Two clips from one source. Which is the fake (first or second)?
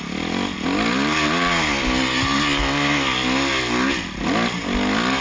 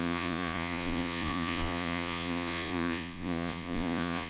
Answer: second